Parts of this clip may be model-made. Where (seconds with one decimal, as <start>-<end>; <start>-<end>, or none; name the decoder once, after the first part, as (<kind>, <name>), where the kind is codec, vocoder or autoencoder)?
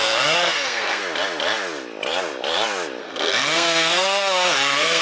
0.0-1.0 (codec, SNAC); 3.0-5.0